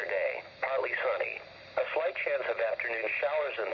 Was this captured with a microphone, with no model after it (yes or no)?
yes